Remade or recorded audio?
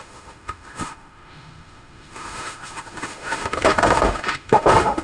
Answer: remade